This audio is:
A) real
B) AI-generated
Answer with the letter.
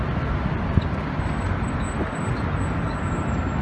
A